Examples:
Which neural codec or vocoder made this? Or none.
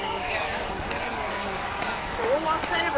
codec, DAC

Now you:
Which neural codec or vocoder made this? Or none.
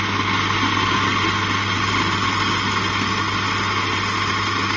none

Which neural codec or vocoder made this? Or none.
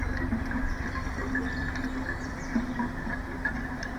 none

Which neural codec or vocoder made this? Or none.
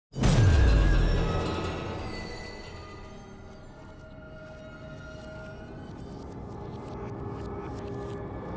none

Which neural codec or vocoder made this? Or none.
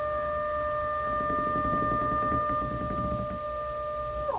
none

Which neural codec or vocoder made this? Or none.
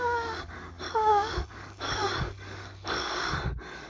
codec, DAC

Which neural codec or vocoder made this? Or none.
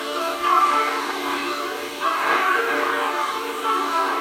codec, DAC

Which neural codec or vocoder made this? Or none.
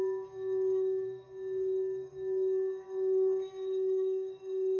codec, DAC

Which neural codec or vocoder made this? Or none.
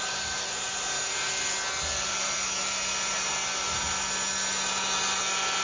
none